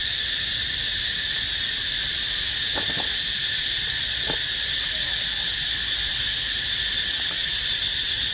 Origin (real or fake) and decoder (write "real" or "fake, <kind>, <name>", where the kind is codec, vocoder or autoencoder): fake, vocoder, BigVGAN v2